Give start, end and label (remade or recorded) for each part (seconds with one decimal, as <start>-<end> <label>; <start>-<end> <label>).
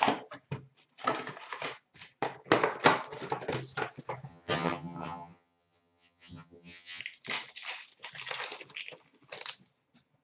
0.0-4.3 recorded; 4.3-7.0 remade; 7.0-10.2 recorded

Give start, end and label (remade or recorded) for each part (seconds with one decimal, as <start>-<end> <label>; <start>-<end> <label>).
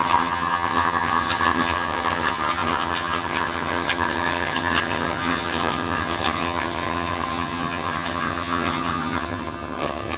0.0-10.2 remade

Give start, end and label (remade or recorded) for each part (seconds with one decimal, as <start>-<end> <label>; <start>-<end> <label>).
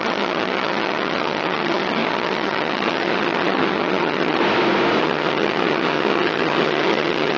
0.0-4.4 remade; 4.4-5.0 recorded; 5.0-7.4 remade